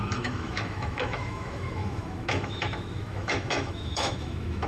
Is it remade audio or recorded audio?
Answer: remade